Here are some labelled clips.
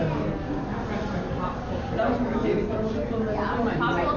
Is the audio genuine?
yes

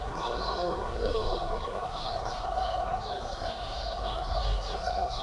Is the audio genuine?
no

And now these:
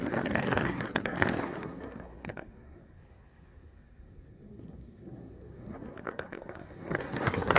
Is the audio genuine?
no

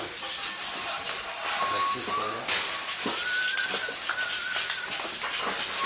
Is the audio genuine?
yes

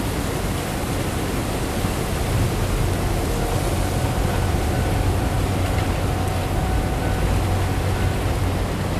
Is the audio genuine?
yes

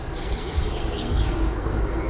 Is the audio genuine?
no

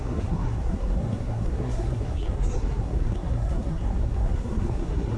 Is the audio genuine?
no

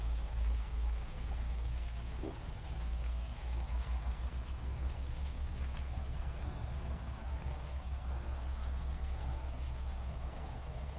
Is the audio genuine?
no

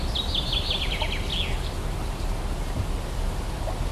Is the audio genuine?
yes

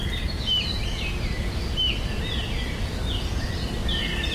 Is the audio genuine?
yes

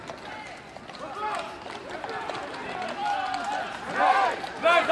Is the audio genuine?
yes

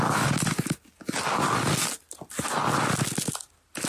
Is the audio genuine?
yes